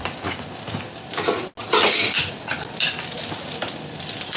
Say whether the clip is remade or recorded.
recorded